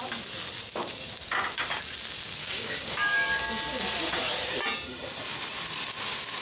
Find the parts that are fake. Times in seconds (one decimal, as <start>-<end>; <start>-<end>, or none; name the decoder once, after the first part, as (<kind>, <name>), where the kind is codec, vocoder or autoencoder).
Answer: 2.4-3.4 (codec, DAC)